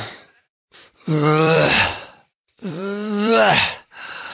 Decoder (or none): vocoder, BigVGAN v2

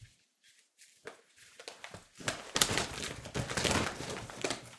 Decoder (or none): none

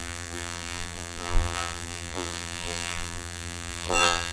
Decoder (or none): vocoder, BigVGAN v2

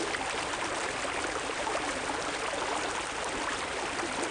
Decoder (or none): none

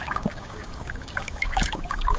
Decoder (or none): codec, DAC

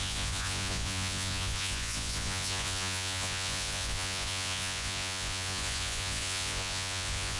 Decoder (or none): vocoder, Vocos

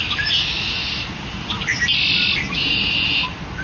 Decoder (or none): none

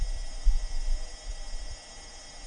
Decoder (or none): vocoder, BigVGAN v2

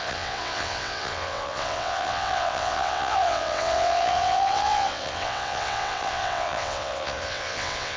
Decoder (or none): vocoder, WaveNeXt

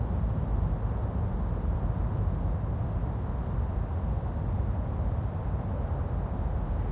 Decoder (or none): none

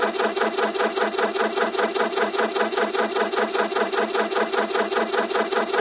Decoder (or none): none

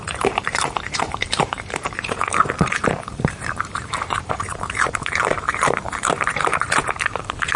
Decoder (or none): vocoder, BigVGAN v2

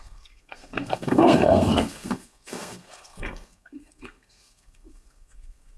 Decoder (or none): codec, SNAC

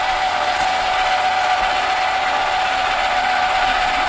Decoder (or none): vocoder, BigVGAN v2